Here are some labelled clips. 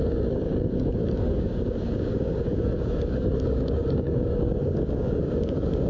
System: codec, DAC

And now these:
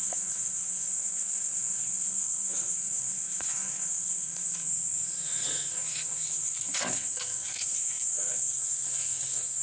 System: codec, SNAC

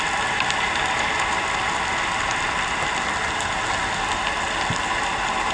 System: none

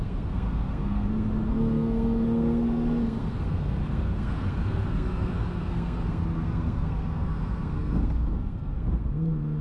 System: codec, SNAC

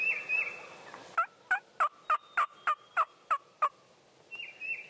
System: none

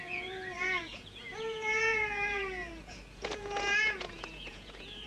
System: vocoder, Vocos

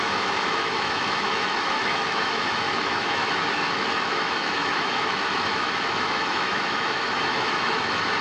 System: autoencoder, DAC-VAE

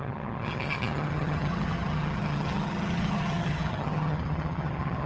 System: vocoder, HiFi-GAN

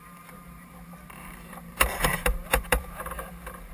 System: vocoder, BigVGAN v2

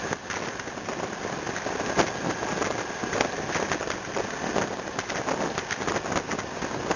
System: none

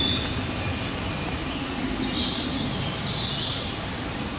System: none